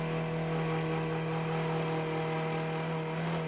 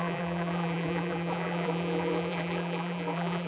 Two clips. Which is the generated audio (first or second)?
second